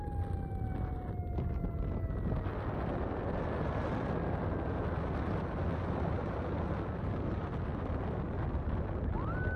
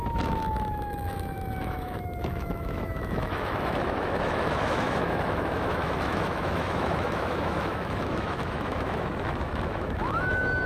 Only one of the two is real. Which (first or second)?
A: first